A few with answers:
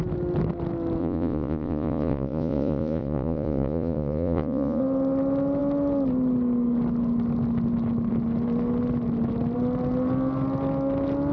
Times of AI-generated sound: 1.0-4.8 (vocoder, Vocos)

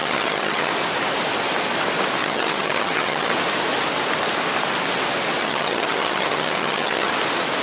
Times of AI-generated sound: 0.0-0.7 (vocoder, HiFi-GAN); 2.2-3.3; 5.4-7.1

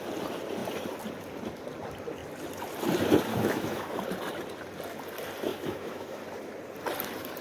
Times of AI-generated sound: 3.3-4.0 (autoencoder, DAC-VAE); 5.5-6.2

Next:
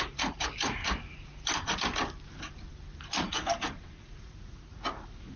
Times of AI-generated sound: 0.0-0.8 (vocoder, Vocos); 4.0-5.4

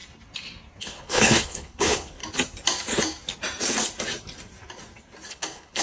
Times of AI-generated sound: 0.8-2.2 (codec, HILCodec); 5.3-5.8

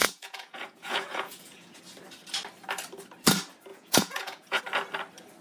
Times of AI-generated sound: 0.0-1.8 (vocoder, Vocos); 3.7-4.6